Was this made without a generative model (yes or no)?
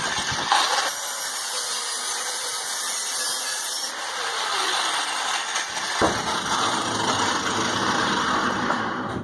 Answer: yes